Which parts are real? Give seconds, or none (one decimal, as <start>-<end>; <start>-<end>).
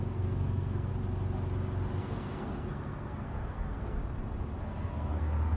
0.9-2.0; 4.0-4.6